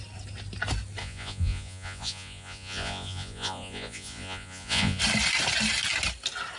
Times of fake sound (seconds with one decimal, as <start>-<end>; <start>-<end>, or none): 1.0-5.0